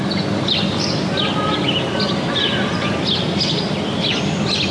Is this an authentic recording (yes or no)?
yes